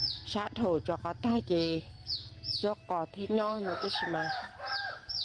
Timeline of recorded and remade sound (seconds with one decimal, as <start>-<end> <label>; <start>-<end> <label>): 0.0-1.3 recorded; 1.3-2.1 remade; 2.1-3.1 recorded; 3.1-4.0 remade; 4.0-5.2 recorded